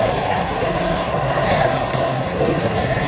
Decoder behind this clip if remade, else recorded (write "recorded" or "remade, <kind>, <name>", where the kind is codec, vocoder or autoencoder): remade, codec, SNAC